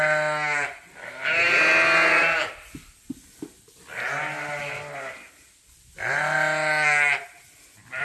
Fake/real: real